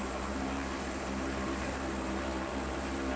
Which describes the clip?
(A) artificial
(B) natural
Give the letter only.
A